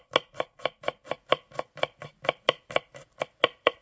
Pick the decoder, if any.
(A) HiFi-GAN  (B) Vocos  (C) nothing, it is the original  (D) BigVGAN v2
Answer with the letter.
C